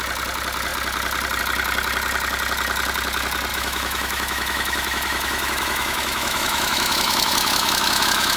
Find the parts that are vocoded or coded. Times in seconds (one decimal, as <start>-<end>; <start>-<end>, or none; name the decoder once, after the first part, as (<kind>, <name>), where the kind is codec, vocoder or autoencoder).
3.5-8.4 (autoencoder, DAC-VAE)